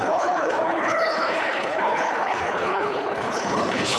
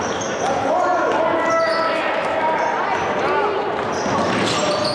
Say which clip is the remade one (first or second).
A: first